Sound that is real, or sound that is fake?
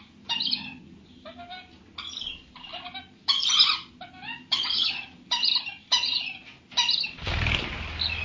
real